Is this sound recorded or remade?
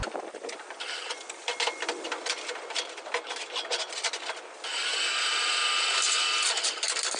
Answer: recorded